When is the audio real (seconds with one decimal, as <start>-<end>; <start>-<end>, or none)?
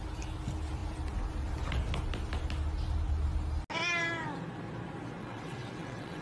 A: 0.0-5.2